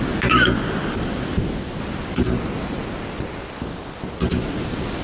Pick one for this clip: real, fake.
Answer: real